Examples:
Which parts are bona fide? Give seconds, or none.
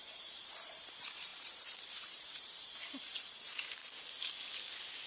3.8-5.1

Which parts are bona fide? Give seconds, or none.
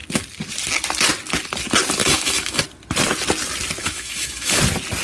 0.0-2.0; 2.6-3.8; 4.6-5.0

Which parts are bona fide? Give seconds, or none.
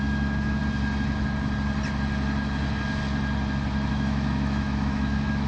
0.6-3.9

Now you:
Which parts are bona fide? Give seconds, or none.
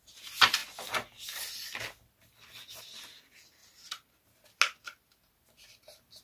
0.0-6.2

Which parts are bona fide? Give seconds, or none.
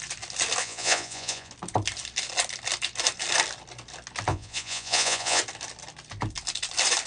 0.0-0.6; 1.5-4.3; 5.4-7.1